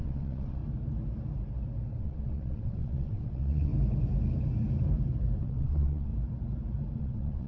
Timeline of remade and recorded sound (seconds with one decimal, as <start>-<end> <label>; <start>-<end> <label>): 0.0-0.6 remade; 0.6-2.0 recorded; 2.0-3.7 remade; 3.7-5.4 recorded; 5.4-6.1 remade; 6.1-7.0 recorded; 7.0-7.5 remade